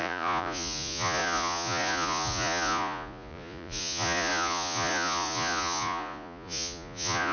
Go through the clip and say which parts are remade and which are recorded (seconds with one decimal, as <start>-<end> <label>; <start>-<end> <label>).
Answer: 0.0-7.3 remade